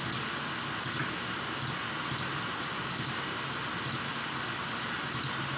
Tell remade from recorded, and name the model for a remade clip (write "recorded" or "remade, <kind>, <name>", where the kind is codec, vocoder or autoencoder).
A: recorded